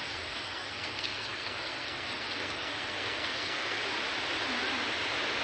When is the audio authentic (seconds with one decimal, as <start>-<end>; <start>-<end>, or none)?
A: 3.8-5.4